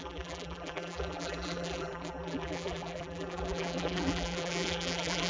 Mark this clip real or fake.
fake